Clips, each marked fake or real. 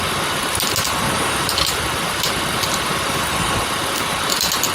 real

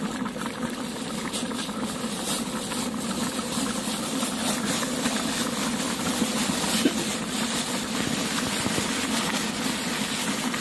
fake